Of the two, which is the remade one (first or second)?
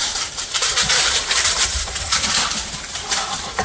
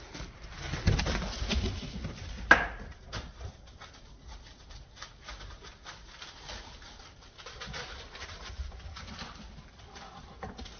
first